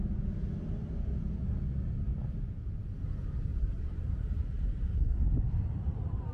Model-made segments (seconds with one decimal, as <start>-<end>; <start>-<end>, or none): 2.1-2.7; 3.5-4.9

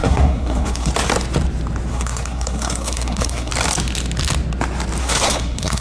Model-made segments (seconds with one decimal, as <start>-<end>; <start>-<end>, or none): 0.0-0.9; 1.9-3.5; 5.0-5.8

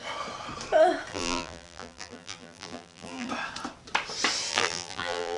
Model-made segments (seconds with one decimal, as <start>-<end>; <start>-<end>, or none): 1.1-3.3; 4.5-5.4

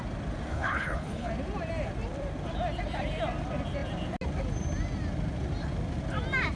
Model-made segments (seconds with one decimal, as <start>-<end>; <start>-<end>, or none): 0.5-1.3

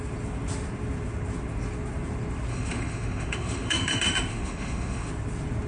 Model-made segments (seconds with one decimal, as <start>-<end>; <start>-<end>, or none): 2.5-5.1

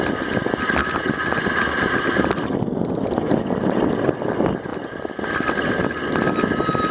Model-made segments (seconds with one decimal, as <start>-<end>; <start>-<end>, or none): none